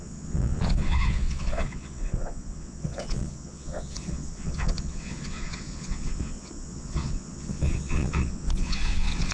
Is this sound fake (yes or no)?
yes